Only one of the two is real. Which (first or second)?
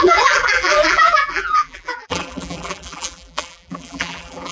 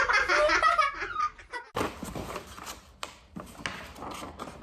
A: second